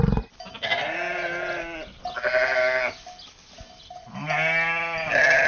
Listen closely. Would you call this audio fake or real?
real